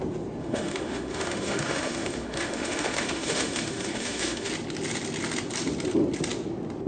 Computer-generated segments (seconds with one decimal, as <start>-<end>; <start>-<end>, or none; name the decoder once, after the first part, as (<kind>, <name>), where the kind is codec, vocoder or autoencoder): 0.4-4.5 (autoencoder, DAC-VAE)